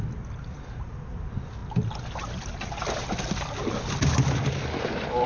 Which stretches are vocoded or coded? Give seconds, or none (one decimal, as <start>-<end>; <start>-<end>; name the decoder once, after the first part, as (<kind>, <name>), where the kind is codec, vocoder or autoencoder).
none